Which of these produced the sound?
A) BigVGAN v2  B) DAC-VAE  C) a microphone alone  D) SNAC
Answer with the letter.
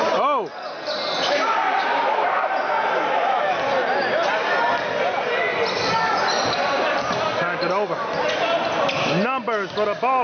C